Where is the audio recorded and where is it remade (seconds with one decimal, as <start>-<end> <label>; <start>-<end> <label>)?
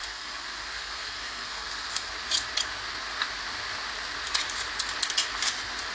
0.0-2.1 remade; 2.1-5.9 recorded